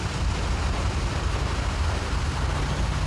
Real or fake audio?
real